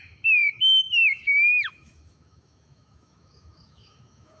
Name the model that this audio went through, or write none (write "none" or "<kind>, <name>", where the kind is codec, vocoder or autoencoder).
autoencoder, DAC-VAE